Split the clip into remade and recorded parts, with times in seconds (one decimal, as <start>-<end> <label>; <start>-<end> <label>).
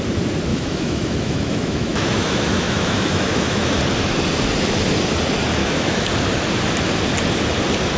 0.0-0.5 recorded; 0.5-3.8 remade; 3.8-5.6 recorded; 5.6-6.1 remade; 6.1-8.0 recorded